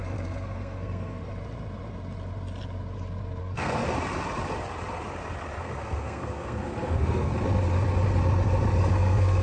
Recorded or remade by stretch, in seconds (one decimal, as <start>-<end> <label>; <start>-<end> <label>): 0.0-1.3 remade; 1.3-3.4 recorded; 3.4-3.8 remade; 3.8-5.6 recorded; 5.6-7.3 remade; 7.3-8.9 recorded; 8.9-9.4 remade